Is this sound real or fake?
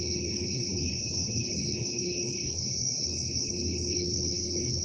fake